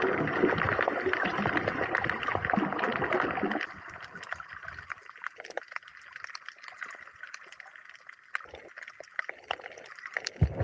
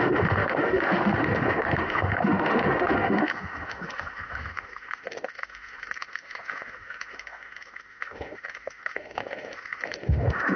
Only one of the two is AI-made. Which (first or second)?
second